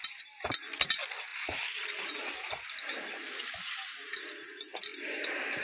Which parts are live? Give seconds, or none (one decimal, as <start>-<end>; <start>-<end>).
0.0-5.6